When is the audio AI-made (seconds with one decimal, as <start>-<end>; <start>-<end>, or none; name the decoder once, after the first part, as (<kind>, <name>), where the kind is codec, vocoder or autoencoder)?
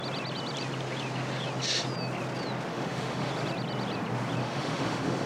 2.7-3.3 (autoencoder, DAC-VAE); 4.4-5.3